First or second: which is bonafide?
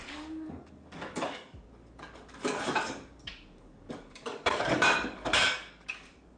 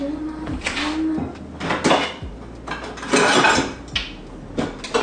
second